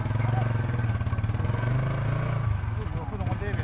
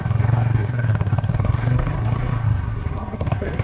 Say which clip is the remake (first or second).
second